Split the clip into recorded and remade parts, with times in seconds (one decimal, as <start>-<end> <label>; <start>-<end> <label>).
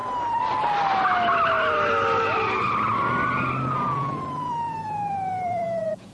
0.0-3.7 recorded; 3.7-6.1 remade